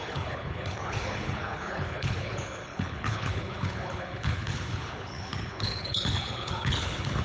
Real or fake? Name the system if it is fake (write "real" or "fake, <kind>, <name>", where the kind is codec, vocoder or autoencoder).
fake, codec, HILCodec